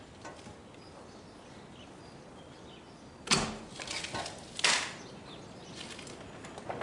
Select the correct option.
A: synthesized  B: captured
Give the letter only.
B